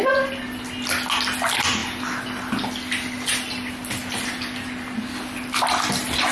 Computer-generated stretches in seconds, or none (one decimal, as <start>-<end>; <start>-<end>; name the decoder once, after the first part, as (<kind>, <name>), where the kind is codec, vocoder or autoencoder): none

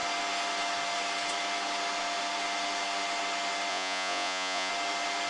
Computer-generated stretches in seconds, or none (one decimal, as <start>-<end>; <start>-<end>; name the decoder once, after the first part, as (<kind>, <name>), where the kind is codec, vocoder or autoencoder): 3.7-4.7 (vocoder, Vocos)

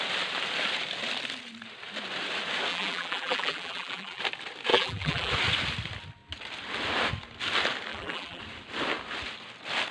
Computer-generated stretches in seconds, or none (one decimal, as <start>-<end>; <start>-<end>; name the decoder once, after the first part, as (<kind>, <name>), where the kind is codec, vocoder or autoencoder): 2.7-4.2 (vocoder, BigVGAN v2); 4.7-5.3; 7.9-8.4

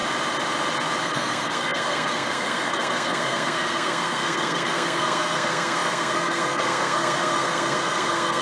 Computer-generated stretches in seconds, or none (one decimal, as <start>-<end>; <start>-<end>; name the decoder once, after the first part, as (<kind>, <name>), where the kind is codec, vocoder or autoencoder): 1.0-8.4 (codec, SNAC)

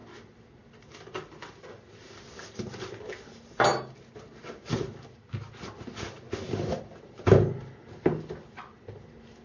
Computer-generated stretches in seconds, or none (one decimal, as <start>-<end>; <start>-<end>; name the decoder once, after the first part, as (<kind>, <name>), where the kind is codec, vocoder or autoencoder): none

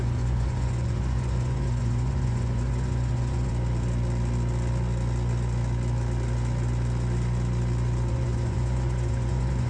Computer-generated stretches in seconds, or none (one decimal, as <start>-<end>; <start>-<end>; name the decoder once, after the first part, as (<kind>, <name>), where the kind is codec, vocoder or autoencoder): 0.0-3.5 (vocoder, Vocos); 8.1-9.7

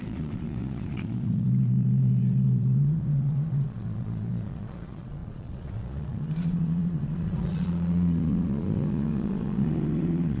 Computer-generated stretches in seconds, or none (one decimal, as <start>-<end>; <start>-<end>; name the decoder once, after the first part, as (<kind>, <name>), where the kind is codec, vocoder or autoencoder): 0.0-10.4 (vocoder, Vocos)

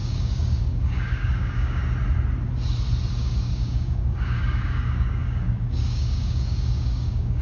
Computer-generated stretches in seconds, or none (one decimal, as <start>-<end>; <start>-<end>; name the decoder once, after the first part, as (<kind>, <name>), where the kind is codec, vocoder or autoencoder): 0.0-1.8 (codec, DAC); 3.1-7.4